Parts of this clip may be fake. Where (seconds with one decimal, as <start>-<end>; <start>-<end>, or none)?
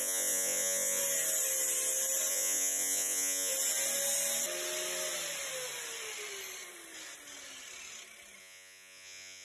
0.0-1.0; 2.3-3.5; 8.4-9.4